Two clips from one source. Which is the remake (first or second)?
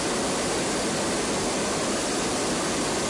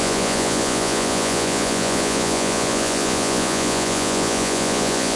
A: second